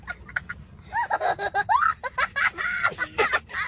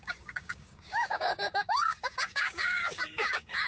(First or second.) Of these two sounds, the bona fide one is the first